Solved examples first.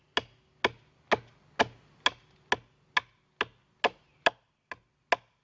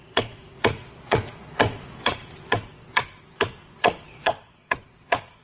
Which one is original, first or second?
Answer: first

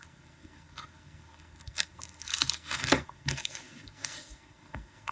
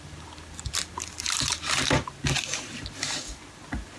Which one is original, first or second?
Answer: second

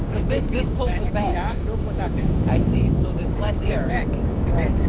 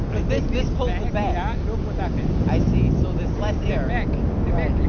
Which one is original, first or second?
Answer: second